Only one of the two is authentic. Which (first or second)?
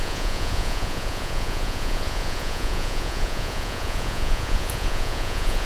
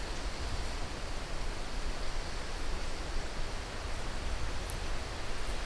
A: second